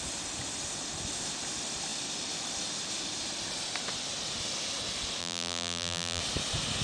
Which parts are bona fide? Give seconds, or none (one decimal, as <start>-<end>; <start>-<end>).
0.0-5.2; 6.2-6.8